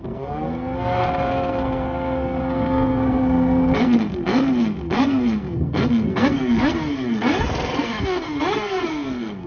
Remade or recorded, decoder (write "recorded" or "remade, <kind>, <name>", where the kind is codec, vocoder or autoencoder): remade, codec, SNAC